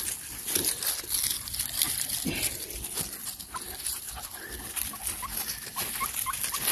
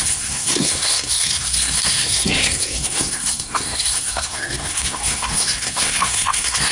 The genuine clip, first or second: first